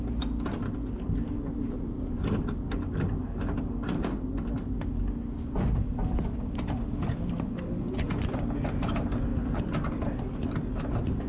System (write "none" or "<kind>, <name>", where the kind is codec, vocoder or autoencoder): none